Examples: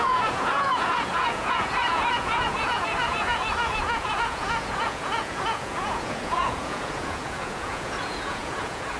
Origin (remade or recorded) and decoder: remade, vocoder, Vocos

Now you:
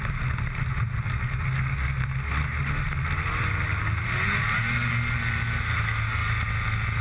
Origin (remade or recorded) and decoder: recorded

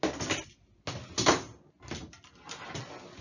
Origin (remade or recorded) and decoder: recorded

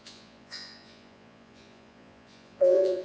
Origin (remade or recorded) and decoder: remade, vocoder, Vocos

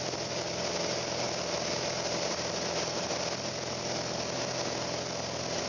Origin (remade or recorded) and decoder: recorded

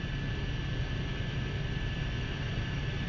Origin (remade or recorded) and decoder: recorded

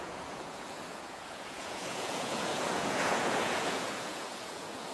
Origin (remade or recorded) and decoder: remade, vocoder, Vocos